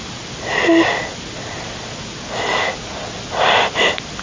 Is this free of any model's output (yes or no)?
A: yes